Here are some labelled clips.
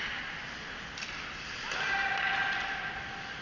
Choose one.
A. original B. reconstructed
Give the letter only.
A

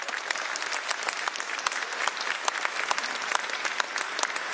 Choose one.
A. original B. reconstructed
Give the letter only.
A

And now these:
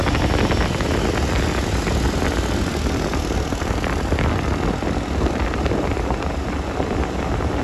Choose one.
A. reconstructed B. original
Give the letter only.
B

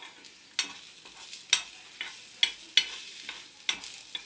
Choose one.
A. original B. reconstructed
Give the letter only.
A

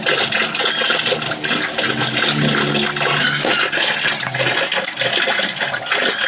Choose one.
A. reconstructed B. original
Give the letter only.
B